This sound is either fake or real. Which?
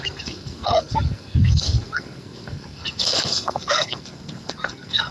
fake